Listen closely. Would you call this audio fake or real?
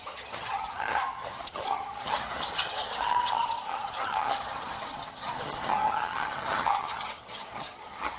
fake